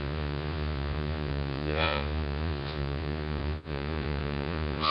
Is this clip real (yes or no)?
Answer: no